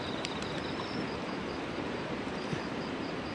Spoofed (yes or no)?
yes